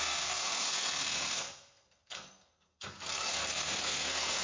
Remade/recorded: remade